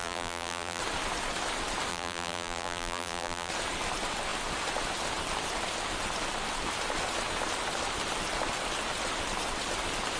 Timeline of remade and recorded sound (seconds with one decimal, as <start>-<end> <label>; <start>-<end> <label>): 0.0-0.8 remade; 0.8-1.9 recorded; 1.9-3.5 remade; 3.5-10.2 recorded